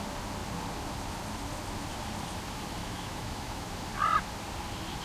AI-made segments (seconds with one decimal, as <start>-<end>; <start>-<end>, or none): 2.8-3.7

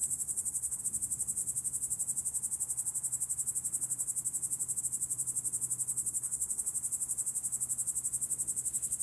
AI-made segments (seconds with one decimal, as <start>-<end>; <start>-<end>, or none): 0.0-0.8; 5.9-6.6

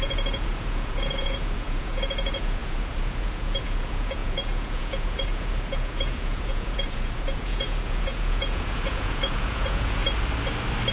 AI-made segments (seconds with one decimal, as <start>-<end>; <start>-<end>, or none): 0.0-10.0

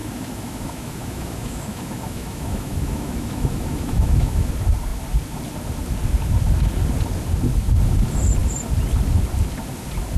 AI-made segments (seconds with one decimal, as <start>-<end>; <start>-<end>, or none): 0.0-4.5

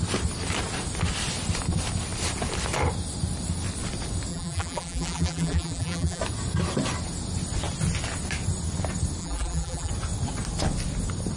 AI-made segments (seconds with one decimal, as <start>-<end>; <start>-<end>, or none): 4.3-6.2; 9.2-9.9

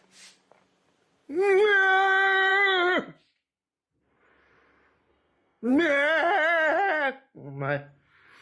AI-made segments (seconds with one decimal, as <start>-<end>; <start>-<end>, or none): 5.1-5.7